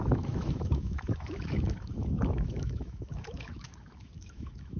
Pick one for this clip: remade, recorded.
remade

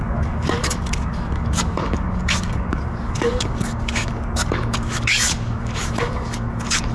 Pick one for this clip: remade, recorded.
remade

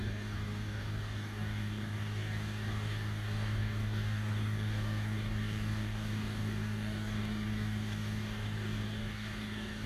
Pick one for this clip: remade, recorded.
remade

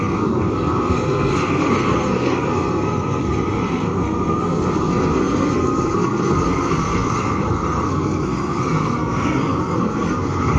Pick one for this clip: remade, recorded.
remade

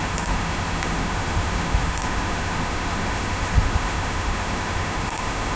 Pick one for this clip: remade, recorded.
remade